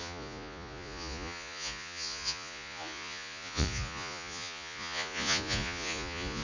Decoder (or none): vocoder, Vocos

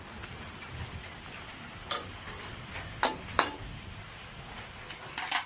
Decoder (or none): none